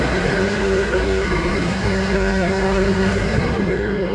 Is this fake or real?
fake